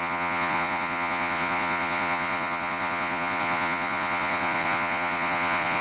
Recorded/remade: remade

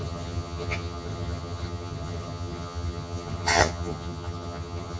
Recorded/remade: remade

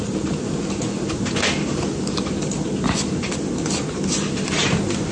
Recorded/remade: recorded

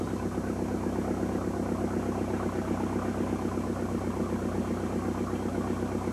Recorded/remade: recorded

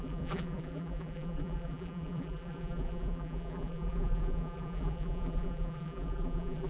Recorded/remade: remade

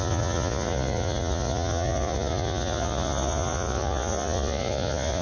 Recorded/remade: remade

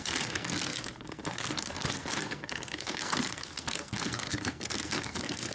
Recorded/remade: remade